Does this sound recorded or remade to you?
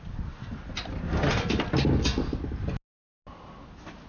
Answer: recorded